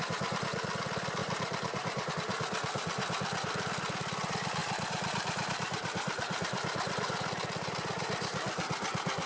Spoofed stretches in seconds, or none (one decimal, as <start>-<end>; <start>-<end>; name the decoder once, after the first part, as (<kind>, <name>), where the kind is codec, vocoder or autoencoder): 1.2-2.1 (vocoder, BigVGAN v2); 4.6-7.7